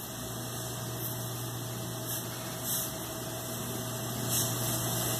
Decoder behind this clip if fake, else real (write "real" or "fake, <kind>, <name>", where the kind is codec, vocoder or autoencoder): real